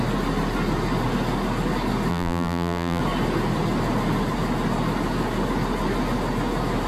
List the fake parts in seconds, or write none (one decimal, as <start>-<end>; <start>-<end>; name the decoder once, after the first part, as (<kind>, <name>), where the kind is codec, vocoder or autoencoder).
2.1-3.0 (vocoder, BigVGAN v2)